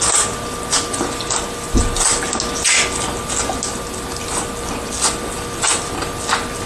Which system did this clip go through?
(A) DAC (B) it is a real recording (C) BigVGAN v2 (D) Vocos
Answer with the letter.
B